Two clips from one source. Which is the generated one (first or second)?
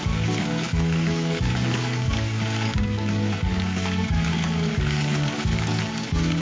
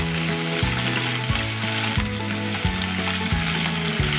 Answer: first